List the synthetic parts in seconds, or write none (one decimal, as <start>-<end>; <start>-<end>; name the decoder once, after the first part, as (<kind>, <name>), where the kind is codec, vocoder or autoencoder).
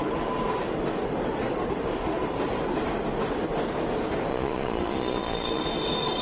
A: 4.3-5.6 (vocoder, Vocos)